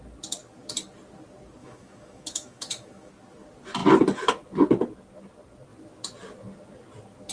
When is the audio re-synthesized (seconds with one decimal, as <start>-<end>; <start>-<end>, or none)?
1.6-3.1